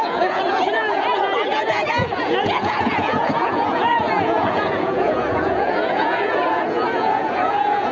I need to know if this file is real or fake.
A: fake